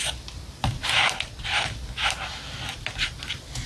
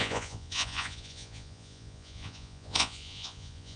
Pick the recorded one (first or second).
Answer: first